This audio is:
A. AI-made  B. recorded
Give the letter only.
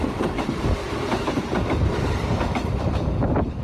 A